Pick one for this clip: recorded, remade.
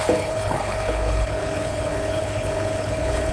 remade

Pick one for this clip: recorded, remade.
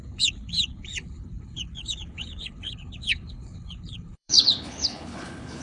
remade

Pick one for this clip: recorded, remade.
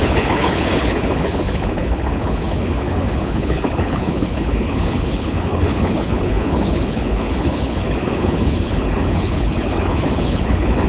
remade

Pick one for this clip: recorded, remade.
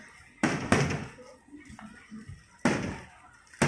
recorded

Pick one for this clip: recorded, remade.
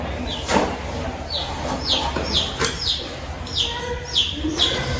recorded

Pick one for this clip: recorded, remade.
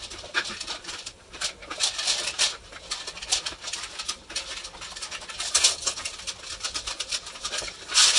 recorded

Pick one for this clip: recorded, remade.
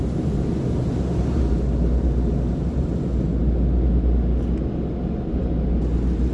recorded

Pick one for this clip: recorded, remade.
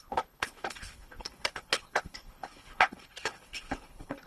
remade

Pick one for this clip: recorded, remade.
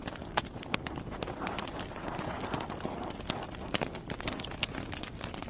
recorded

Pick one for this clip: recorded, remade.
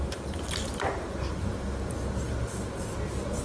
recorded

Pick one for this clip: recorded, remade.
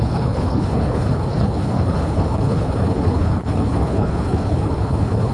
remade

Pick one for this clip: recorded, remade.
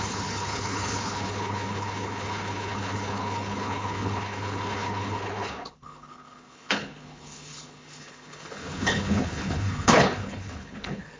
remade